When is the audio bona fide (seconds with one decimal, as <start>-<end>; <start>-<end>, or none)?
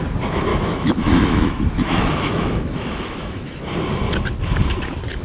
0.0-0.5; 3.6-5.2